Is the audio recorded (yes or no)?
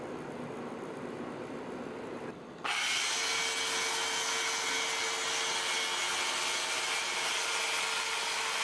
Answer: yes